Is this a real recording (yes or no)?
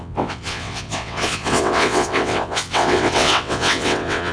no